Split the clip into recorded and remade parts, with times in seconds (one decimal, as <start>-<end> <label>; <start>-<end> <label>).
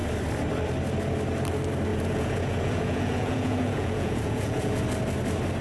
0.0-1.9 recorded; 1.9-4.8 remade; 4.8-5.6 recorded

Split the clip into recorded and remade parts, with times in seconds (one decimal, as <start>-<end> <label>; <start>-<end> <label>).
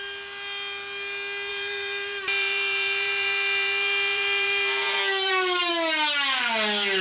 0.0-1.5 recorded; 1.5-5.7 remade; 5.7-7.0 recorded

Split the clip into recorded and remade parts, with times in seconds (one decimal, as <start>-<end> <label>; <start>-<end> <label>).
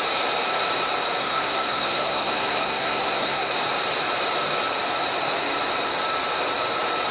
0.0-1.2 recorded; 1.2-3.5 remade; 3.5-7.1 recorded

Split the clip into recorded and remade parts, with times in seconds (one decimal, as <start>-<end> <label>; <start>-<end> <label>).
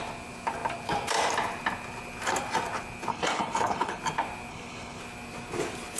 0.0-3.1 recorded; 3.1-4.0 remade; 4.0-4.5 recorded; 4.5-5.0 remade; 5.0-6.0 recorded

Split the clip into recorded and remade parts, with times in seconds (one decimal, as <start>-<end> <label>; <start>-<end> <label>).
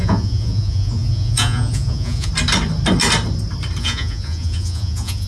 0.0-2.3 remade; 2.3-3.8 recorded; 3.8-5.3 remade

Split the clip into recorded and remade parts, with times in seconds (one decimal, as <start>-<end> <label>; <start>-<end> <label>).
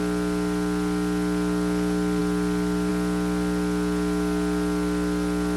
0.0-5.6 recorded